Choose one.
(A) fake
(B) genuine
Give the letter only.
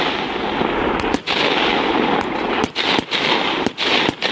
B